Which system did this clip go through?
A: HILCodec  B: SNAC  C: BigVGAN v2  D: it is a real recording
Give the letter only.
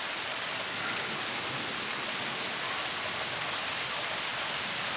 D